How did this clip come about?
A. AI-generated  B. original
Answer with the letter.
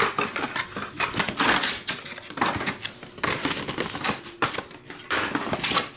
B